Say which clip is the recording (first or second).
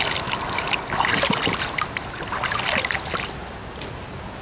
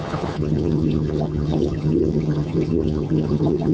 first